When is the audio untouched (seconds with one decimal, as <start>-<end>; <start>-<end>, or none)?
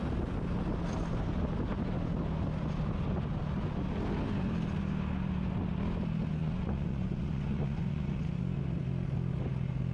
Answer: 0.0-6.4; 8.2-9.9